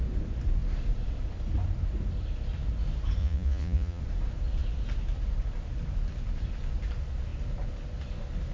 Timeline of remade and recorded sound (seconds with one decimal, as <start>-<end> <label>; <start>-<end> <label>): 0.0-3.2 recorded; 3.2-4.0 remade; 4.0-8.5 recorded